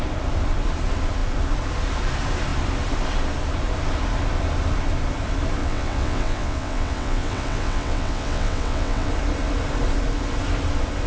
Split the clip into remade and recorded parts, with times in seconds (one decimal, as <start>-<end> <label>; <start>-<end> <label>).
0.0-5.6 recorded; 5.6-9.1 remade; 9.1-11.1 recorded